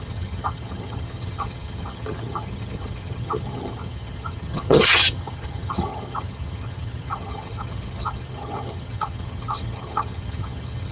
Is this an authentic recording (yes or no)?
no